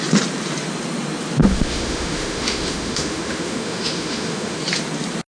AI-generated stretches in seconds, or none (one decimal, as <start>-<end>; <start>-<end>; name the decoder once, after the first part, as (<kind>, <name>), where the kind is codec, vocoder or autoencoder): 1.4-4.6 (autoencoder, DAC-VAE)

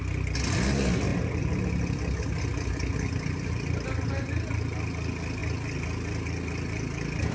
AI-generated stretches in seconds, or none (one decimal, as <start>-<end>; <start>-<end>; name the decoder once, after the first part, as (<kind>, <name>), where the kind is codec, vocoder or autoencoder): none

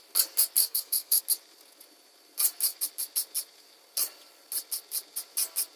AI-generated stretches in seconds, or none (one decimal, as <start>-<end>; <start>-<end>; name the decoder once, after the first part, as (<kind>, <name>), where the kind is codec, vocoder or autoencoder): 0.6-1.2 (codec, SNAC)

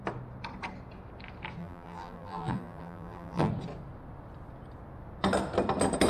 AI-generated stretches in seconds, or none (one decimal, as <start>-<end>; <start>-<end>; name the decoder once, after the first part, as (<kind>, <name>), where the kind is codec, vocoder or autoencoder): 1.6-3.5 (vocoder, BigVGAN v2)

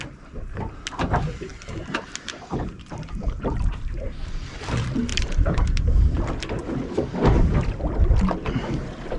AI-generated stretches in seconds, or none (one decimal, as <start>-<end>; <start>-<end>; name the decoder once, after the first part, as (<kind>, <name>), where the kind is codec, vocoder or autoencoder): 1.5-4.6 (vocoder, BigVGAN v2); 5.1-5.7

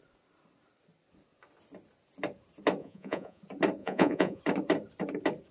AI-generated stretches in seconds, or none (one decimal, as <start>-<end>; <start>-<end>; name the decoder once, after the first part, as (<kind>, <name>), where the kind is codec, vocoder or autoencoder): 2.8-3.4 (vocoder, Vocos); 3.8-4.4

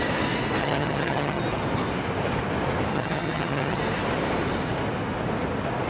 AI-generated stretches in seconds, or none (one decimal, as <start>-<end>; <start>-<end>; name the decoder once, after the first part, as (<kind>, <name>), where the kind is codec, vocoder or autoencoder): 0.6-1.4 (vocoder, HiFi-GAN); 2.9-3.8

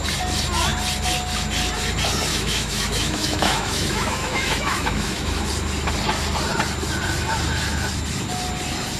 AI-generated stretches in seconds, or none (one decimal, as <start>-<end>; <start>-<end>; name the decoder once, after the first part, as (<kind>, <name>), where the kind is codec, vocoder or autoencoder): 2.3-5.5 (autoencoder, DAC-VAE)